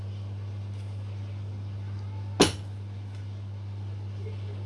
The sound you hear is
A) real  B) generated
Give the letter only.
A